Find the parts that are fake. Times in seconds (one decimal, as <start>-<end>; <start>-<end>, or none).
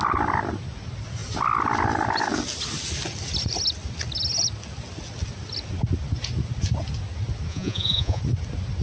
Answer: 7.5-8.2